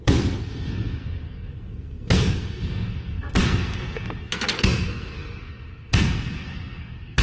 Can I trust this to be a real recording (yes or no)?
no